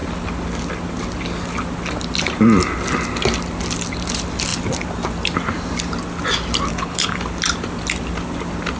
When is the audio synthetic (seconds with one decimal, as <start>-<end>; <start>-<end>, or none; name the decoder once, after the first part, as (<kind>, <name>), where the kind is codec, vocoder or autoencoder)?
6.7-7.2 (codec, HILCodec)